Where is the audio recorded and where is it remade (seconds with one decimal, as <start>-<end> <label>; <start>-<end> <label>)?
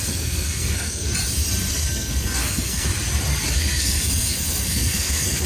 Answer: 0.0-1.1 remade; 1.1-1.7 recorded; 1.7-2.9 remade; 2.9-3.5 recorded; 3.5-5.5 remade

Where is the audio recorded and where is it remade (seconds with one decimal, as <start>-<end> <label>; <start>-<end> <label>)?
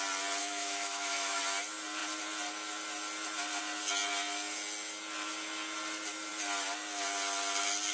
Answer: 0.0-0.4 recorded; 0.4-1.4 remade; 1.4-7.9 recorded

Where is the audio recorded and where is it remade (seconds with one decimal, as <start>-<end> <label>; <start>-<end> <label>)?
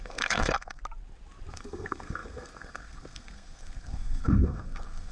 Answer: 0.0-0.8 remade; 0.8-1.5 recorded; 1.5-5.1 remade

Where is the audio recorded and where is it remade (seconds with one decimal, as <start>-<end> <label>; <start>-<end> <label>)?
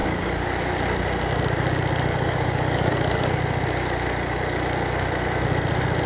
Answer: 0.0-0.8 remade; 0.8-2.1 recorded; 2.1-3.4 remade; 3.4-6.1 recorded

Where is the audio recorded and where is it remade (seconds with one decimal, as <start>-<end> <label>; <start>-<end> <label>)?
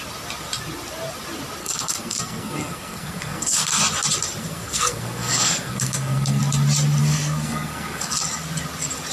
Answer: 0.0-1.6 recorded; 1.6-3.8 remade; 3.8-4.4 recorded; 4.4-6.4 remade; 6.4-7.0 recorded; 7.0-8.2 remade; 8.2-9.1 recorded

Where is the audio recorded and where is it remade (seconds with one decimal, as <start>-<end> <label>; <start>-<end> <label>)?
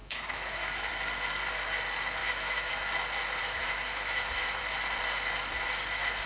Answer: 0.0-0.9 remade; 0.9-2.2 recorded; 2.2-2.7 remade; 2.7-3.4 recorded; 3.4-4.6 remade; 4.6-6.3 recorded